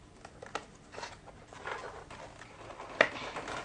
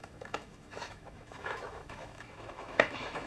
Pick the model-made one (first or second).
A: second